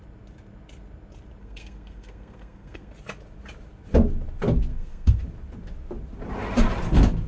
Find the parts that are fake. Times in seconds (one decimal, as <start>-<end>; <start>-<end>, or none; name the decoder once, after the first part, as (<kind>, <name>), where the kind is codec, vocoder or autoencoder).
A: 1.4-2.9 (codec, SNAC); 4.7-5.2